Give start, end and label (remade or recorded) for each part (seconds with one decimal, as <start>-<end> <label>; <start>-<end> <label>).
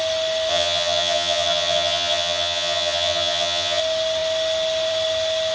0.0-0.5 recorded; 0.5-3.8 remade; 3.8-5.5 recorded